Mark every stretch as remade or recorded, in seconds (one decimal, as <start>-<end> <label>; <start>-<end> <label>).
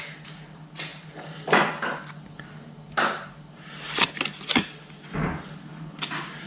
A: 0.0-6.5 recorded